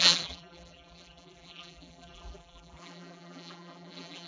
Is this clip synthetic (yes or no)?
yes